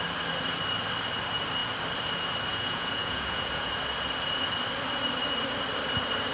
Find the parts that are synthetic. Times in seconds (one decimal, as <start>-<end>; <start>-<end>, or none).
2.5-3.7